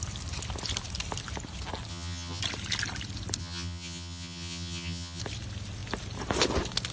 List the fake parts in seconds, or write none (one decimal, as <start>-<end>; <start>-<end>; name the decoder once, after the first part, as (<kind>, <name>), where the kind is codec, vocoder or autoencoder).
1.9-2.4 (vocoder, HiFi-GAN); 3.4-5.2